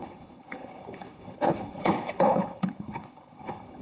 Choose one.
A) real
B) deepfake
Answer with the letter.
B